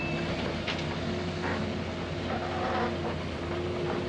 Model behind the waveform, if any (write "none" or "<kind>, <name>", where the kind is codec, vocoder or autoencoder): none